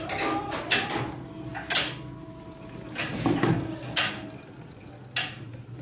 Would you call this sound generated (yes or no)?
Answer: no